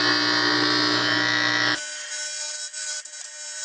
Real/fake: real